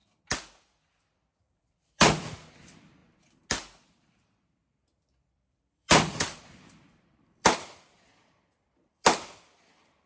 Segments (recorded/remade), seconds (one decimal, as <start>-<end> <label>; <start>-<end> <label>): 0.0-1.4 recorded; 1.4-3.0 remade; 3.0-5.3 recorded; 5.3-10.1 remade